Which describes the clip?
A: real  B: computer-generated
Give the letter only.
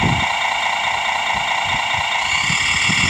A